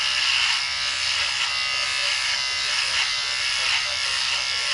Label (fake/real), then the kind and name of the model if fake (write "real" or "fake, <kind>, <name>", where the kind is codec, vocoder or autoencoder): real